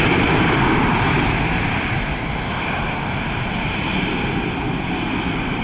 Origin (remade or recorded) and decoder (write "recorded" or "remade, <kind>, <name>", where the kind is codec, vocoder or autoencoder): remade, vocoder, BigVGAN v2